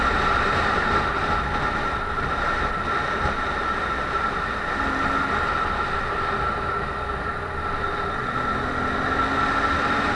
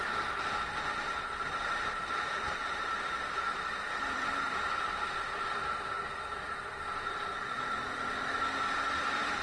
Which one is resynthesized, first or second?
second